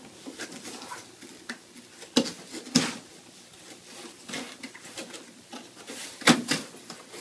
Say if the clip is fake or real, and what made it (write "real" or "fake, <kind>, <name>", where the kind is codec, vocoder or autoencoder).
real